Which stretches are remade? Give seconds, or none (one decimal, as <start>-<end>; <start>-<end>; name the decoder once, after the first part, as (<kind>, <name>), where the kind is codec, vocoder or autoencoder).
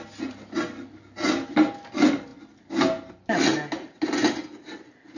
none